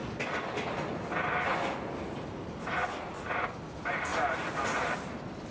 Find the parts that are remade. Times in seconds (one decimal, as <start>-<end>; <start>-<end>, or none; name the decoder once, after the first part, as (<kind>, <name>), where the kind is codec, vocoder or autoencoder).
3.3-4.1 (vocoder, BigVGAN v2); 5.1-5.5